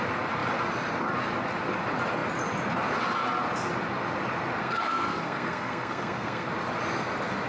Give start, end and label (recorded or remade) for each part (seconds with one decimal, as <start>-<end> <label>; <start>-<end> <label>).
0.0-4.6 recorded; 4.6-6.5 remade; 6.5-7.5 recorded